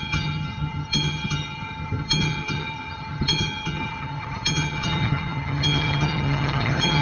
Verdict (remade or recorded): remade